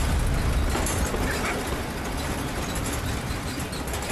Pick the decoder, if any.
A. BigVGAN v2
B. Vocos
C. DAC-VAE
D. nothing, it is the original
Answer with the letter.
D